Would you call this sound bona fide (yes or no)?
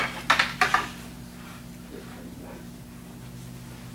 yes